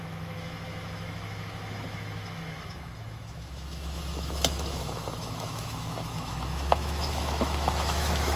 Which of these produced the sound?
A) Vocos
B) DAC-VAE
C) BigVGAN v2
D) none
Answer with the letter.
B